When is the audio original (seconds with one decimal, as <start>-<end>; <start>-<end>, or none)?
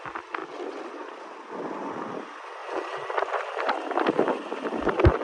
0.0-2.6; 3.7-5.2